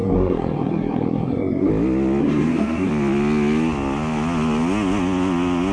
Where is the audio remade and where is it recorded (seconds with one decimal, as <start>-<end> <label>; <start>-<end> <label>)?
0.0-1.7 remade; 1.7-2.2 recorded; 2.2-2.9 remade; 2.9-5.7 recorded